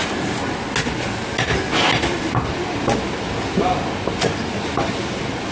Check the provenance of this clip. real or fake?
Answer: real